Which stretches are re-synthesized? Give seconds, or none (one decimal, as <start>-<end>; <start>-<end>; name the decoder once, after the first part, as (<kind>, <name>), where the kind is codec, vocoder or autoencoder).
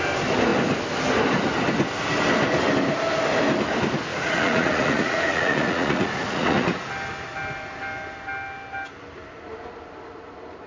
4.1-6.9 (vocoder, Vocos)